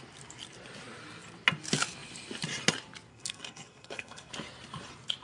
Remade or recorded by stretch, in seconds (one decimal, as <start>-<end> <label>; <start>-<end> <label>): 0.0-3.1 recorded; 3.1-4.3 remade; 4.3-5.2 recorded